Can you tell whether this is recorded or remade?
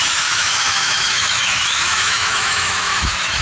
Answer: remade